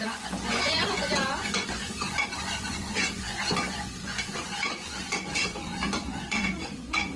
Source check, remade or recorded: remade